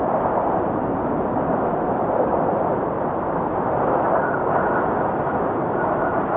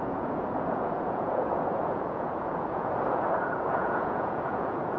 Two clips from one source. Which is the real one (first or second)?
first